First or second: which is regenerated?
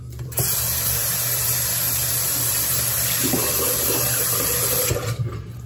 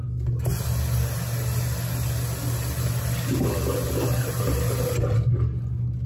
first